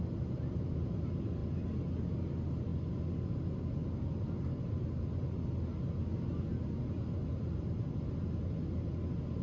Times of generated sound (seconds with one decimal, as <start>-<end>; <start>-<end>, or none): none